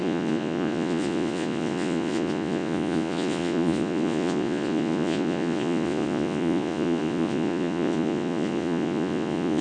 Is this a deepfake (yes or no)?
yes